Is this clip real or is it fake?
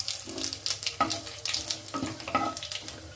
real